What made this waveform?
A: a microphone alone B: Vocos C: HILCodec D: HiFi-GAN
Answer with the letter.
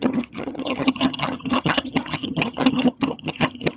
D